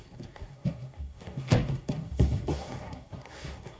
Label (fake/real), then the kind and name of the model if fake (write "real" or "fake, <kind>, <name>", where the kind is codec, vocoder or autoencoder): fake, codec, SNAC